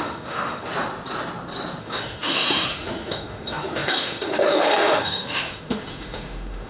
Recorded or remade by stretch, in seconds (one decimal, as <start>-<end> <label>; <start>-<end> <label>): 0.0-0.7 remade; 0.7-1.8 recorded; 1.8-6.7 remade